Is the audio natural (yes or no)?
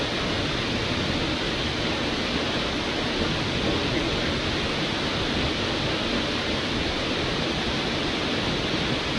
yes